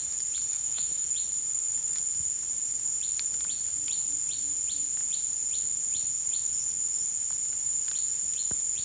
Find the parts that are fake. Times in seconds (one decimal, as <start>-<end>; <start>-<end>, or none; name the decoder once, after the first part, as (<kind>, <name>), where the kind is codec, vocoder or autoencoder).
0.5-1.1 (autoencoder, DAC-VAE)